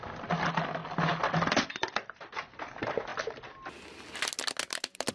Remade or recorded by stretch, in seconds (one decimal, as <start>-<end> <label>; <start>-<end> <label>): 0.0-5.1 recorded